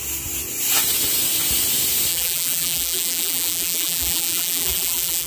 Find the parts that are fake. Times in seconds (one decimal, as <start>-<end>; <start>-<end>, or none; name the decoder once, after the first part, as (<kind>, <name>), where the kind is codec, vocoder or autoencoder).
2.1-5.3 (vocoder, BigVGAN v2)